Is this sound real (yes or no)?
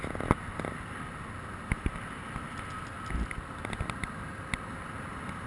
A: yes